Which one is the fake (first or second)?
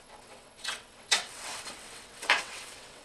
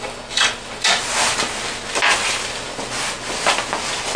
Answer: first